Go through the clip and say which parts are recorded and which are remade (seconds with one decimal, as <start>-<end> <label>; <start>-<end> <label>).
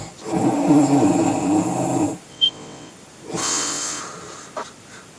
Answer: 0.0-2.3 recorded; 2.3-2.9 remade; 2.9-3.4 recorded; 3.4-4.0 remade; 4.0-5.2 recorded